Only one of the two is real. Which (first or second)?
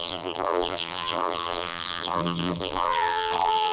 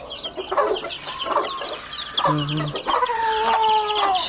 second